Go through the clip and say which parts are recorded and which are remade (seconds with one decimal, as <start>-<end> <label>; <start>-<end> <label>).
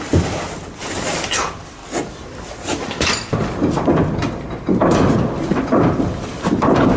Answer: 0.0-7.0 remade